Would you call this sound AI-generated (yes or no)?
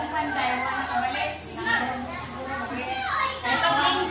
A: no